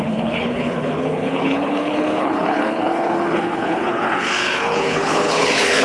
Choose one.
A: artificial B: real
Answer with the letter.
A